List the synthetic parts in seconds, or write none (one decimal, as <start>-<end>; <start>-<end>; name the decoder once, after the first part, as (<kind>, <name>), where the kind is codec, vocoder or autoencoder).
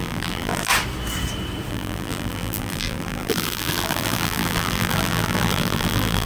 0.0-0.7 (vocoder, BigVGAN v2); 1.7-6.3